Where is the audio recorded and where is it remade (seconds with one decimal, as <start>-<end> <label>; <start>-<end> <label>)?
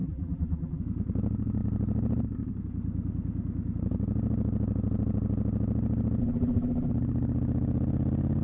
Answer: 0.0-0.8 remade; 0.8-6.2 recorded; 6.2-6.9 remade; 6.9-8.4 recorded